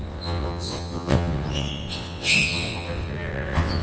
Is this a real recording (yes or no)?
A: no